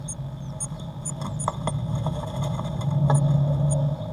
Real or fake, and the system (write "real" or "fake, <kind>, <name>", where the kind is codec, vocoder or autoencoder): real